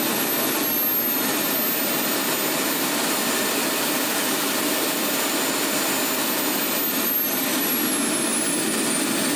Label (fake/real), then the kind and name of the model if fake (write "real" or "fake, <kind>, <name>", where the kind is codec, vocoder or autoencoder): real